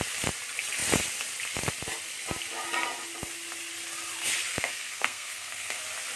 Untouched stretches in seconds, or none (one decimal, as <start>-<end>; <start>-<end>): 0.0-4.5; 5.8-6.2